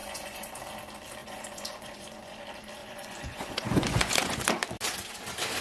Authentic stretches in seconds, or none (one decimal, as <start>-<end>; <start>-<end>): 0.6-1.2; 2.4-2.8; 4.5-5.6

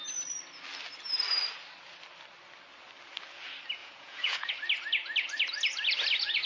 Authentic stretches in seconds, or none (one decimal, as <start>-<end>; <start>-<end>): 0.0-3.8; 4.5-6.5

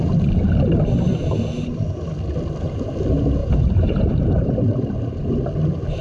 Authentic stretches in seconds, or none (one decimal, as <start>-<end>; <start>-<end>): 0.0-3.4; 4.5-6.0

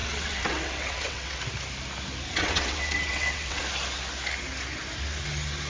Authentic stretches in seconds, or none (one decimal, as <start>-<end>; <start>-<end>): 1.4-2.3; 3.6-5.7

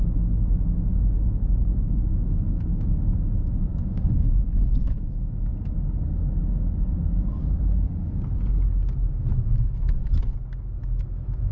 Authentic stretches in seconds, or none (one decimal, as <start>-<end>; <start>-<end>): 5.5-9.1; 10.0-11.0

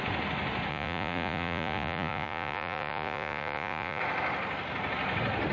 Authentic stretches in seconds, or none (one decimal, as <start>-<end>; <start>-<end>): 0.0-0.7; 4.0-5.5

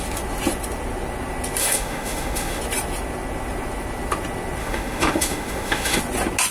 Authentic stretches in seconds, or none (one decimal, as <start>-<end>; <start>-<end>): 0.0-1.6; 2.6-4.6; 6.0-6.5